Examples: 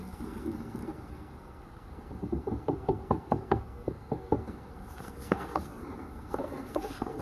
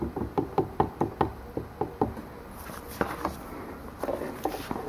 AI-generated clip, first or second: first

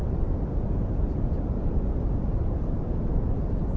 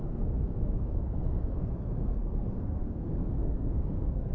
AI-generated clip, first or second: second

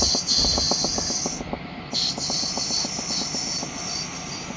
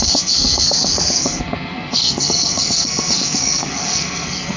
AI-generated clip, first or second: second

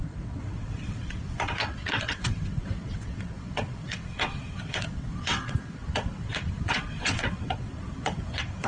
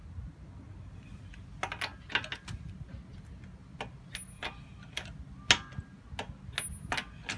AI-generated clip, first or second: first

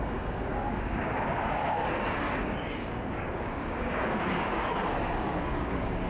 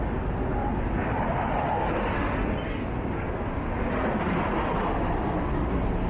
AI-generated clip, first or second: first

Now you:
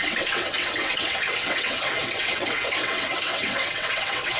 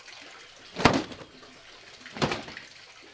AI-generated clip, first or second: first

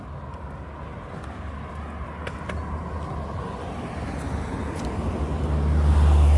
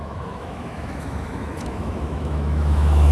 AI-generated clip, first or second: second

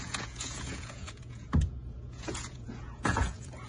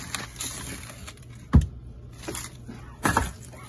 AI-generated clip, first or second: first